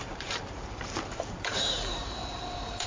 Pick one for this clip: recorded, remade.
remade